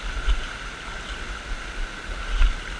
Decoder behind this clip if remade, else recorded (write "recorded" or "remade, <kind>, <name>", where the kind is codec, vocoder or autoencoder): recorded